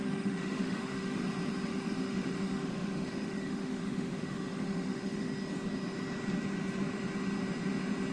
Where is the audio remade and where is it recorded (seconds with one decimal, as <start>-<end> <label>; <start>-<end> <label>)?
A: 0.0-1.2 remade; 1.2-1.7 recorded; 1.7-5.3 remade; 5.3-8.1 recorded